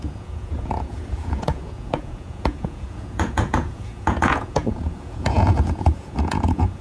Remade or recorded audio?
remade